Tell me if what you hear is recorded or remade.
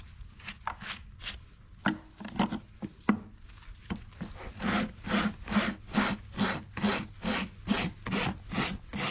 recorded